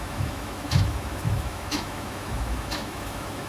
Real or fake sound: fake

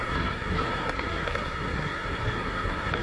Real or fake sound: fake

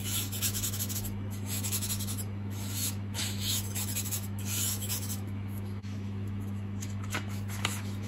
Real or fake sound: fake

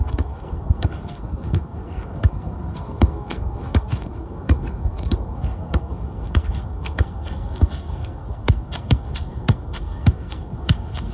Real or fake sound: fake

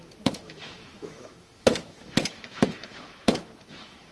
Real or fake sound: fake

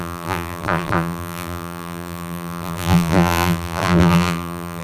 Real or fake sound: fake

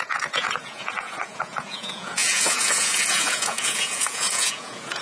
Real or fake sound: fake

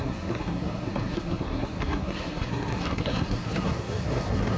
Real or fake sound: fake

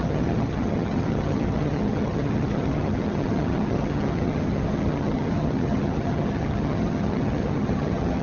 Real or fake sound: fake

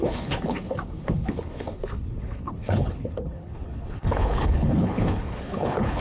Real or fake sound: fake